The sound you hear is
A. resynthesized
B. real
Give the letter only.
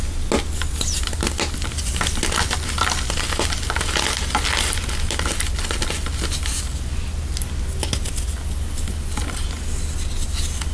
B